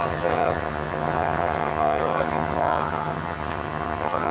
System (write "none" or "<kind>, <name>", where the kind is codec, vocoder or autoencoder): vocoder, HiFi-GAN